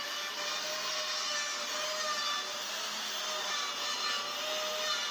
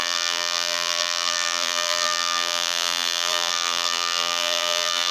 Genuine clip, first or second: first